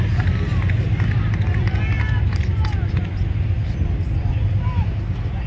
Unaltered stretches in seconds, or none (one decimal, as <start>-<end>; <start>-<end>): 0.0-5.5